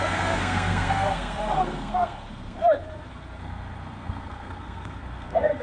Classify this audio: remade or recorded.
remade